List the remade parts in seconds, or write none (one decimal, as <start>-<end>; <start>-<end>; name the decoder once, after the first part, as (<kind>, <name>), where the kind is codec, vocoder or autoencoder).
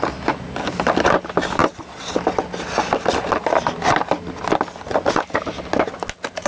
none